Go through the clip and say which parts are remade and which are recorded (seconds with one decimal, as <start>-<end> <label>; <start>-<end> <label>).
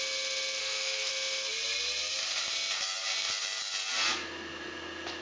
0.0-0.6 recorded; 0.6-1.1 remade; 1.1-5.2 recorded